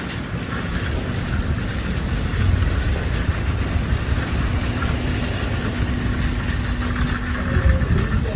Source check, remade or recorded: recorded